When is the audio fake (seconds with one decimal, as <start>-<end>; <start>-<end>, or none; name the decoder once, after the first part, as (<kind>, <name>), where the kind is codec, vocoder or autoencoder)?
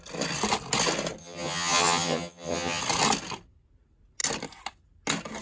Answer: 1.2-2.8 (vocoder, HiFi-GAN)